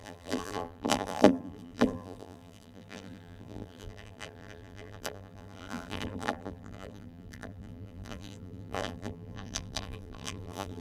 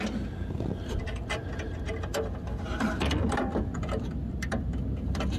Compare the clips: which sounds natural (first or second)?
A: second